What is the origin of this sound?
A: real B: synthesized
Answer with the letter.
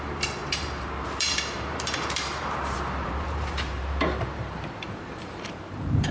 B